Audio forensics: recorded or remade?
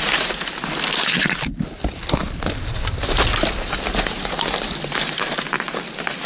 recorded